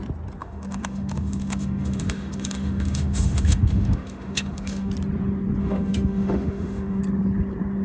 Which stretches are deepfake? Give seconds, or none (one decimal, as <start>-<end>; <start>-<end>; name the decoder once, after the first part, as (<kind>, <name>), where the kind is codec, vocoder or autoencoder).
0.4-4.9 (autoencoder, DAC-VAE); 5.6-7.0